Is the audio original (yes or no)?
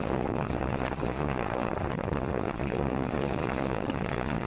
no